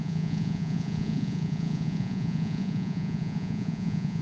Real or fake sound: fake